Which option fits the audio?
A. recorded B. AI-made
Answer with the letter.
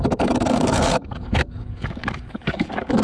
B